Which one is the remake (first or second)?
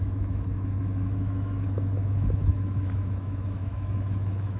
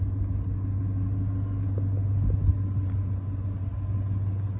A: first